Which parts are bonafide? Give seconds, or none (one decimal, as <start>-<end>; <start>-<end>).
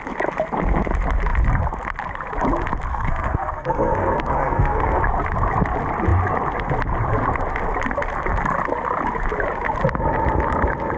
0.0-2.9; 5.0-11.0